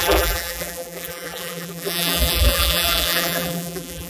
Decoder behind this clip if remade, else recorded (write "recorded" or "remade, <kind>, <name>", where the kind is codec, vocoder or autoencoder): remade, vocoder, BigVGAN v2